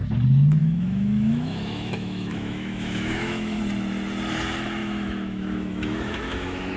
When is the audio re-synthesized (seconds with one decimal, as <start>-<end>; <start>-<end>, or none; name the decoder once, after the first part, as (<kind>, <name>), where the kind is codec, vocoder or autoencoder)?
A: 0.6-3.6 (autoencoder, DAC-VAE); 4.8-6.8